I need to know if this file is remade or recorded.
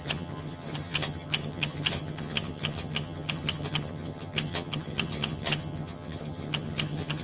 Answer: remade